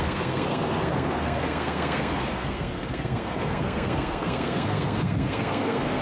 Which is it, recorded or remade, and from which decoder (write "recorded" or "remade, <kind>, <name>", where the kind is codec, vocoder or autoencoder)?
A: remade, codec, SNAC